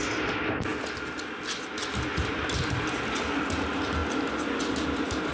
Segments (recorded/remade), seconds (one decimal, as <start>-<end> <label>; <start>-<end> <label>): 0.0-5.3 recorded